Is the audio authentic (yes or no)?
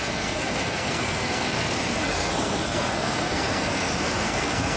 no